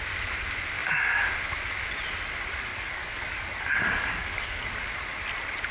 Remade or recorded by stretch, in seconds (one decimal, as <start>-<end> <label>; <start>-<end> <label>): 0.0-2.7 recorded; 2.7-4.6 remade; 4.6-5.7 recorded